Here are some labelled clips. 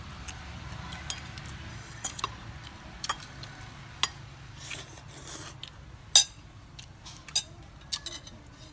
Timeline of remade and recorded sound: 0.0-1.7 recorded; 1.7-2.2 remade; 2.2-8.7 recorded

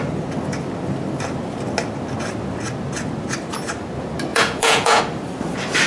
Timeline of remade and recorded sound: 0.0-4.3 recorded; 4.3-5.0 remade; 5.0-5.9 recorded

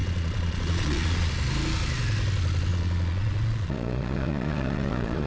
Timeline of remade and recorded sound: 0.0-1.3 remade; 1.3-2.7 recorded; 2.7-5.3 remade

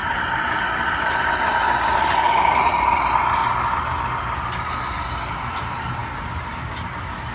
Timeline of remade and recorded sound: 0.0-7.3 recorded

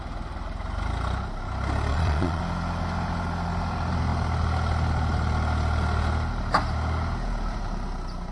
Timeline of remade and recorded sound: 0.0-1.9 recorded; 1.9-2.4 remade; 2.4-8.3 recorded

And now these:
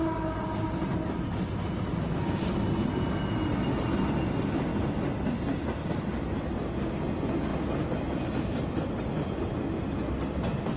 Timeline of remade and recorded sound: 0.0-10.8 recorded